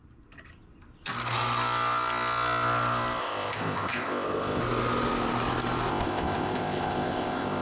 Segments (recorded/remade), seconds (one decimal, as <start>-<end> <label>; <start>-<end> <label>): 0.0-3.2 recorded; 3.2-4.6 remade; 4.6-5.9 recorded; 5.9-7.6 remade